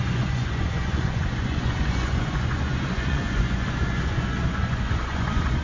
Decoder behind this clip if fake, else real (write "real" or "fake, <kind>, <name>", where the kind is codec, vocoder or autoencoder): fake, vocoder, Vocos